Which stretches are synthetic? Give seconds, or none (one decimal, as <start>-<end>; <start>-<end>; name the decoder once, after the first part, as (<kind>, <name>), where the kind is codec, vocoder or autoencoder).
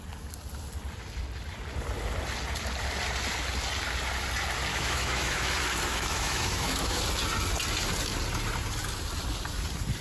4.7-5.5 (autoencoder, DAC-VAE); 5.9-7.0